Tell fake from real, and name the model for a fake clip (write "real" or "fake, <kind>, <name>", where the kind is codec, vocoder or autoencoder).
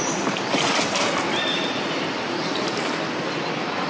real